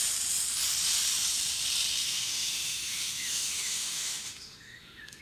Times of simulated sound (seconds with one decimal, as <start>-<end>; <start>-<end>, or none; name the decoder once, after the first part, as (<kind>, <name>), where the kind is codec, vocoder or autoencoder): 2.0-5.2 (autoencoder, DAC-VAE)